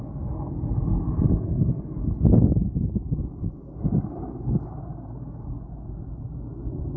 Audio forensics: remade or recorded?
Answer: recorded